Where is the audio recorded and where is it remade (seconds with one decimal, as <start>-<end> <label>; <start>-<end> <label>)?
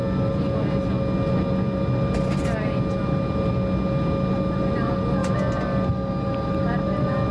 0.0-7.3 recorded